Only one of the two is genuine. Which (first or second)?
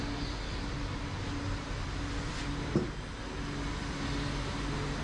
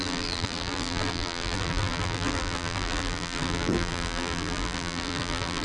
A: first